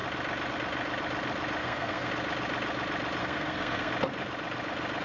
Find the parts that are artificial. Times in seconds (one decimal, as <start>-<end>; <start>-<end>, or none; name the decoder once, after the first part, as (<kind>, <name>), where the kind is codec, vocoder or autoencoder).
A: 1.6-2.1 (codec, SNAC); 3.2-3.9